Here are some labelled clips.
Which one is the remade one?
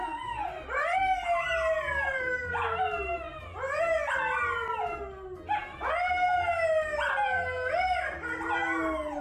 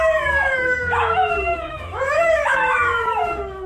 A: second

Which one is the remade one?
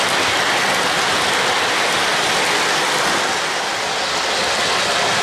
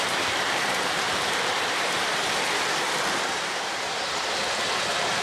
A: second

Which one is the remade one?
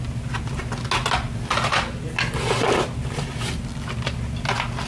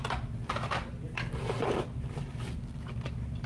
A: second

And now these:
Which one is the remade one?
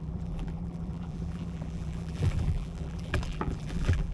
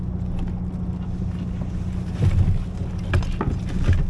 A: first